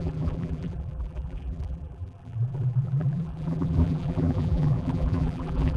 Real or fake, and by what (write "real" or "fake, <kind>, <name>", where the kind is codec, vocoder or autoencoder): fake, vocoder, BigVGAN v2